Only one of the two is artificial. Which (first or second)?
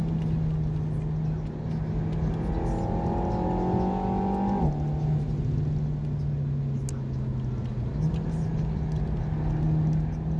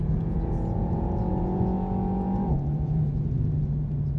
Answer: second